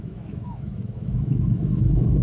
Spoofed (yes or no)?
yes